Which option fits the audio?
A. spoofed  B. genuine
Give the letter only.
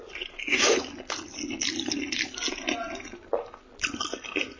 B